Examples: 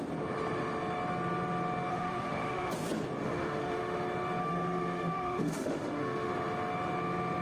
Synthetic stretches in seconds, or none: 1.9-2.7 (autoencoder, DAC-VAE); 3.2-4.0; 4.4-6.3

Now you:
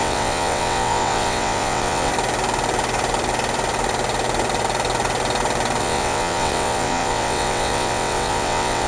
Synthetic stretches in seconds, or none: 0.0-2.1 (vocoder, WaveNeXt); 5.8-8.9

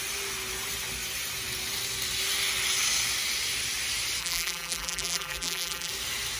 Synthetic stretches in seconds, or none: 4.2-5.9 (vocoder, BigVGAN v2)